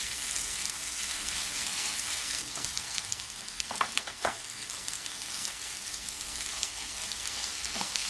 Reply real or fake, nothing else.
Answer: fake